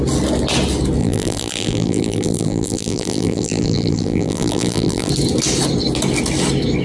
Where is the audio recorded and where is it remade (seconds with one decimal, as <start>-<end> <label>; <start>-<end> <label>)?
0.0-1.0 recorded; 1.0-5.1 remade; 5.1-6.8 recorded